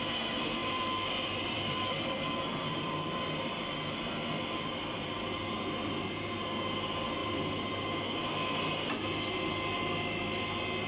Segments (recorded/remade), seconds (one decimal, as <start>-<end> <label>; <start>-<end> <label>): 0.0-0.6 recorded; 0.6-5.5 remade; 5.5-10.9 recorded